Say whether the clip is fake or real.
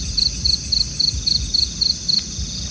real